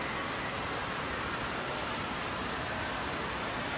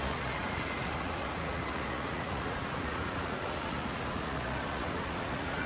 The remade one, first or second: second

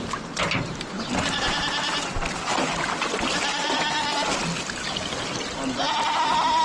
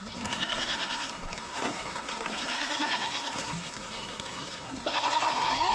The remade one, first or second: second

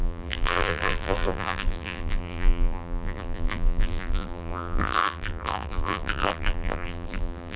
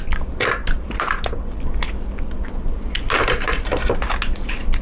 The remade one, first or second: first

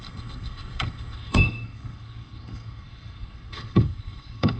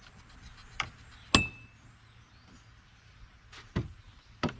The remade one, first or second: first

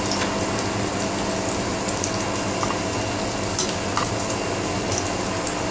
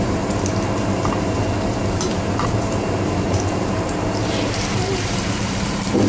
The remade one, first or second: second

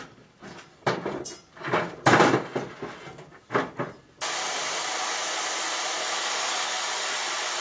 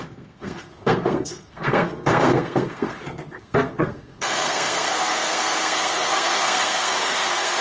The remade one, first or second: second